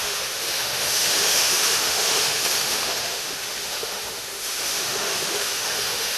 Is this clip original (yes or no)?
no